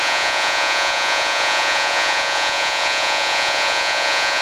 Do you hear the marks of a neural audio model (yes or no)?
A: yes